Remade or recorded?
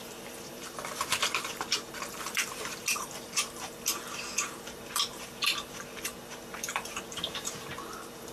remade